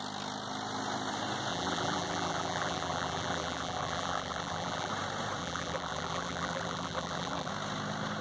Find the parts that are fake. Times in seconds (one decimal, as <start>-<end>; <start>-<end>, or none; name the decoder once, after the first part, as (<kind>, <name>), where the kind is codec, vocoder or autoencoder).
1.5-4.9 (vocoder, BigVGAN v2); 5.4-7.5